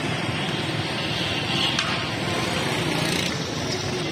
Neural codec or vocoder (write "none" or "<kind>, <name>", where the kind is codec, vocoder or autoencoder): vocoder, BigVGAN v2